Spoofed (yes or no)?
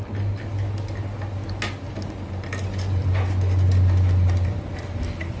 no